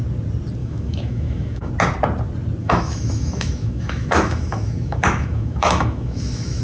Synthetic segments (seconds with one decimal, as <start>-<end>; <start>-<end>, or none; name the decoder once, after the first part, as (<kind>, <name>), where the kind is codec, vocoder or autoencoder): 0.6-1.7 (autoencoder, DAC-VAE); 2.6-6.6